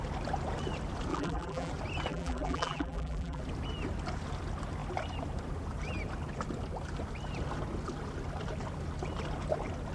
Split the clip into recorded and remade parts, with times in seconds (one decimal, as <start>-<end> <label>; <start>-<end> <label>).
0.0-1.1 recorded; 1.1-1.7 remade; 1.7-2.1 recorded; 2.1-3.4 remade; 3.4-9.9 recorded